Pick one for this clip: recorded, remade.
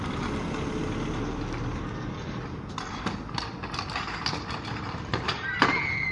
recorded